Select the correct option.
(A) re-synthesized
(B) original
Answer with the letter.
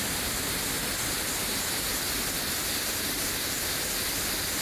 B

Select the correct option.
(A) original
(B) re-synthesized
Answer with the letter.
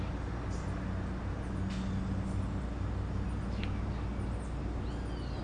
A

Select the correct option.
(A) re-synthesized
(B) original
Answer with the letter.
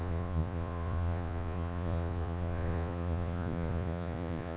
A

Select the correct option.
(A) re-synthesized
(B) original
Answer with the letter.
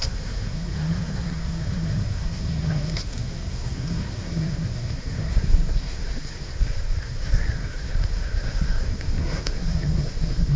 A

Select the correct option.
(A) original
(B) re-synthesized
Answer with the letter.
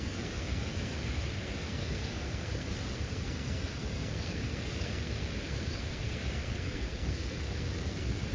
B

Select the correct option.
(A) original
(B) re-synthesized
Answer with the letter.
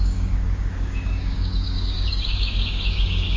B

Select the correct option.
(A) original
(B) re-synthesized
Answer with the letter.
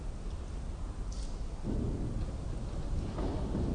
A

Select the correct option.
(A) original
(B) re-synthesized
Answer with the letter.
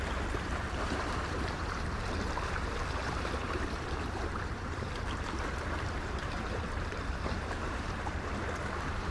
B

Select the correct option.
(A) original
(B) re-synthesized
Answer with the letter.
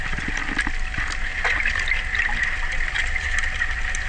A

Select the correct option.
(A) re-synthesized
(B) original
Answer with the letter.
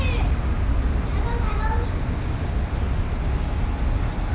B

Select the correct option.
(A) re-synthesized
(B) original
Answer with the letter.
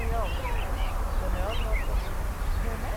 B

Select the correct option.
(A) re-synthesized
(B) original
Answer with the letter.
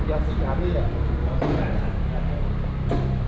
B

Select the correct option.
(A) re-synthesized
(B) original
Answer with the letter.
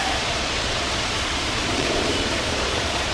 A